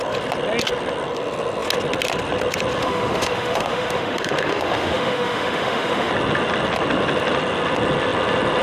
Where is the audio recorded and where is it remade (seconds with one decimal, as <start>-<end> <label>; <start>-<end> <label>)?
0.0-2.8 recorded; 2.8-6.1 remade; 6.1-8.6 recorded